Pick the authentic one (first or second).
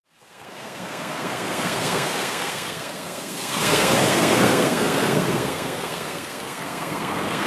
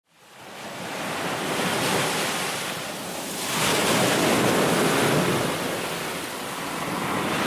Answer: second